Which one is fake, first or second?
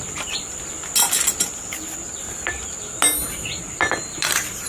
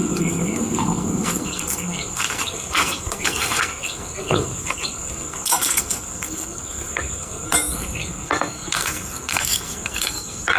second